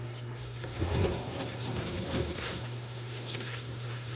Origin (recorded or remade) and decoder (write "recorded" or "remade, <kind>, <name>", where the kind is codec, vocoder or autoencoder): remade, codec, SNAC